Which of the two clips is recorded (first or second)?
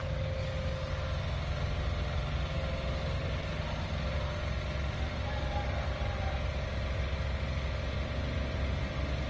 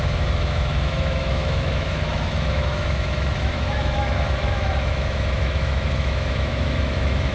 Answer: first